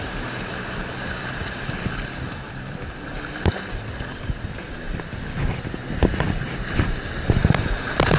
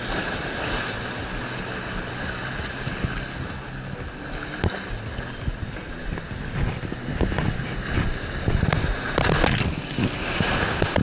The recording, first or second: second